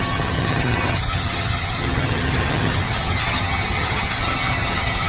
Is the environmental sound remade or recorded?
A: remade